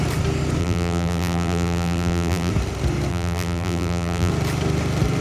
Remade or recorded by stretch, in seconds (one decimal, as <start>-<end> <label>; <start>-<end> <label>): 0.0-0.6 recorded; 0.6-2.5 remade; 2.5-3.1 recorded; 3.1-4.3 remade; 4.3-5.2 recorded